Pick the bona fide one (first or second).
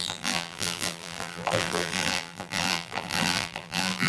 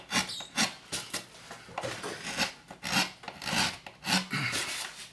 second